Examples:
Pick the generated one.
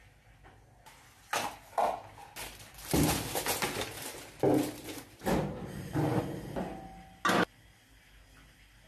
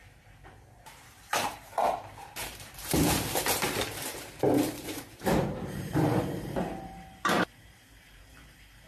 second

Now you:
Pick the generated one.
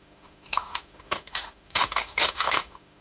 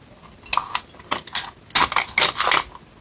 first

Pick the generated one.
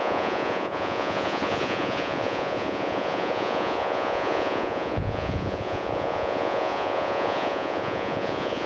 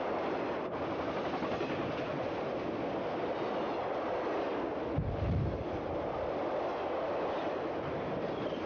first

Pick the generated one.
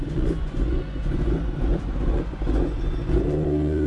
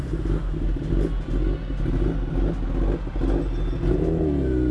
first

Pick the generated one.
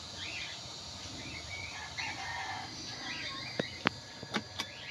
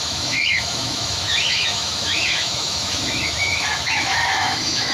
second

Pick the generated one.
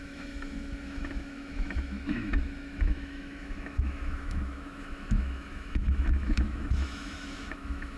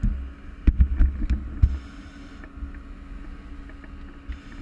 first